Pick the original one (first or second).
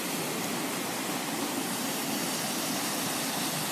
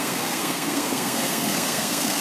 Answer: first